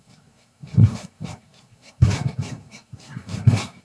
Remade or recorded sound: remade